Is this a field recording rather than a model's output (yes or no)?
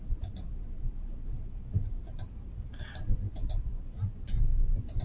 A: no